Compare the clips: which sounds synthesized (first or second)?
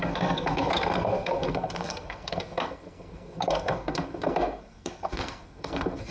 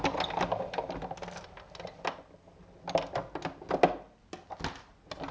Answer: first